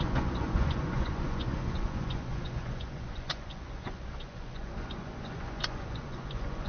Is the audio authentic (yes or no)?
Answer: no